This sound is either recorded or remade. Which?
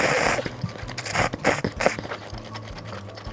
recorded